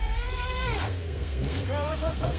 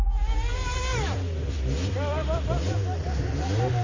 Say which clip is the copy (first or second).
first